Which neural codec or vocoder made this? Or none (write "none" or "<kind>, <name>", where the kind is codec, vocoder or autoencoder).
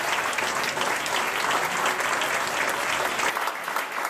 none